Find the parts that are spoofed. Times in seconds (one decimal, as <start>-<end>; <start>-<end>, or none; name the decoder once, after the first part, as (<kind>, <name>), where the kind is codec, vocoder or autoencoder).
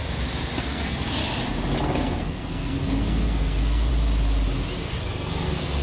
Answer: 0.6-1.2 (codec, SNAC); 1.8-3.9; 5.0-5.8